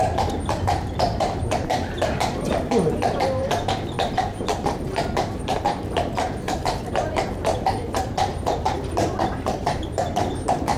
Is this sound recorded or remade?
remade